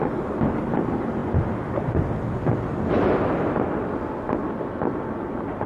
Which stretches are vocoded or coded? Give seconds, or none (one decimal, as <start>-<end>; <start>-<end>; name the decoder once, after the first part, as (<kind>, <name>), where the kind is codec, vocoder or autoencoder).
none

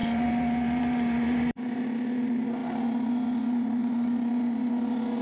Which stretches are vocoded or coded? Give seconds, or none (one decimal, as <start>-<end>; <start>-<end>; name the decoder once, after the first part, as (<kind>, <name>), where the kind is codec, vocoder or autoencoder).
0.0-1.8 (vocoder, BigVGAN v2); 3.8-4.4